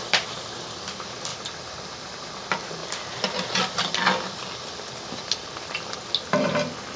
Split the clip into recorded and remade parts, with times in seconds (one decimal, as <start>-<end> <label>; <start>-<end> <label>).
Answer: 0.0-1.3 recorded; 1.3-2.4 remade; 2.4-2.8 recorded; 2.8-5.2 remade; 5.2-7.0 recorded